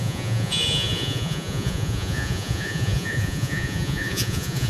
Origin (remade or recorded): remade